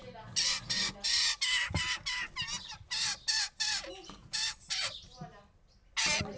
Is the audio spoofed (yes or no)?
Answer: no